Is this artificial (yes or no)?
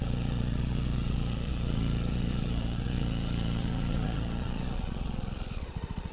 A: yes